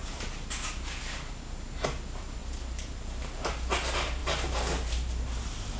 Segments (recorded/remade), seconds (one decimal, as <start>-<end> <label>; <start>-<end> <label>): 0.0-4.2 recorded; 4.2-4.9 remade; 4.9-5.8 recorded